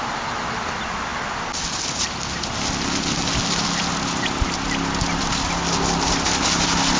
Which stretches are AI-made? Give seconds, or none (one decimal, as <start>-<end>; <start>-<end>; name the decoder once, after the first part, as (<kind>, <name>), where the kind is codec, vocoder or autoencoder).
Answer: none